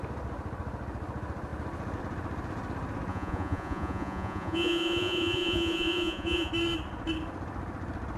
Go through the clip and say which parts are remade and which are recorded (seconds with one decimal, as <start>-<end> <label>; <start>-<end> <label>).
0.0-3.1 recorded; 3.1-6.5 remade; 6.5-8.2 recorded